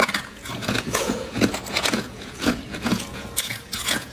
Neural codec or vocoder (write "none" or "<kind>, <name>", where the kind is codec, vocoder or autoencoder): vocoder, Vocos